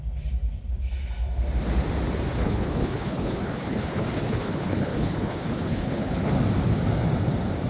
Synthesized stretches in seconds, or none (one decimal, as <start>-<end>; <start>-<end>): 2.3-6.3